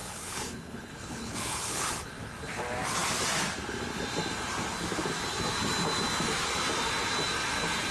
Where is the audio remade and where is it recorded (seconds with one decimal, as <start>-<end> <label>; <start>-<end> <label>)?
0.0-2.1 remade; 2.1-7.9 recorded